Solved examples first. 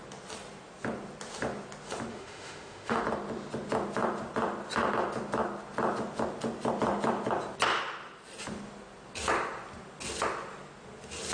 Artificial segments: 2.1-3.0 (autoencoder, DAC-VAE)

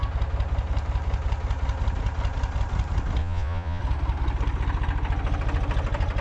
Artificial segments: 3.2-3.8 (vocoder, Vocos)

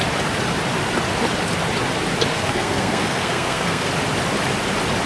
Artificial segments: 2.3-3.9 (codec, SNAC)